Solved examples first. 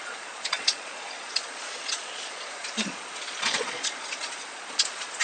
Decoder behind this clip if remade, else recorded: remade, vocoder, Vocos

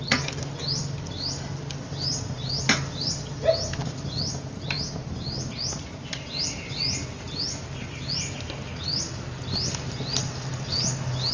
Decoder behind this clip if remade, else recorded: recorded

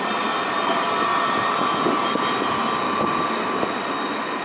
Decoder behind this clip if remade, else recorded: recorded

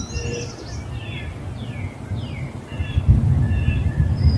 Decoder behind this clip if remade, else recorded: recorded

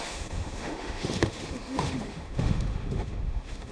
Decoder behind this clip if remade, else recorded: remade, autoencoder, DAC-VAE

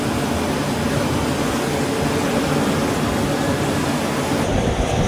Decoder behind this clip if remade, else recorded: recorded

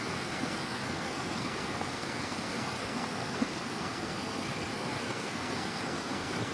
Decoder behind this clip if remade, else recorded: remade, codec, SNAC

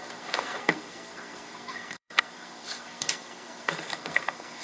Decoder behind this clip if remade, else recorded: remade, codec, SNAC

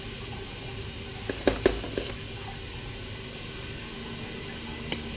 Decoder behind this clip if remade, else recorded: recorded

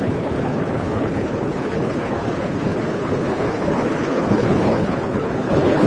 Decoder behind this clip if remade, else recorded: remade, codec, HILCodec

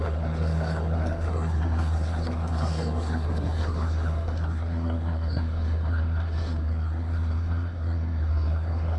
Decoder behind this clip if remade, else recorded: remade, codec, SNAC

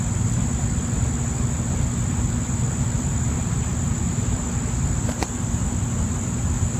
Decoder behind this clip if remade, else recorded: recorded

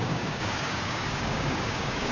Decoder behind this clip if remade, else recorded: remade, codec, DAC